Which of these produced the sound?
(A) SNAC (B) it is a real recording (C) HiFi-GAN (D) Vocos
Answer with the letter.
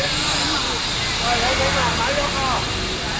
B